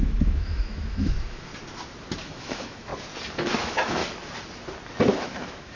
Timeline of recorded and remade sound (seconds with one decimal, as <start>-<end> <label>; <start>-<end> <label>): 0.0-1.5 remade; 1.5-2.2 recorded; 2.2-2.9 remade; 2.9-3.6 recorded; 3.6-4.0 remade; 4.0-5.1 recorded; 5.1-5.8 remade